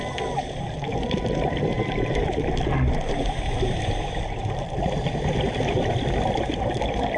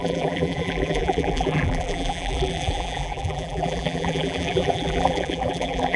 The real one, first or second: first